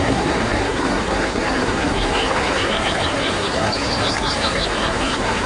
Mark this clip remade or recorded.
remade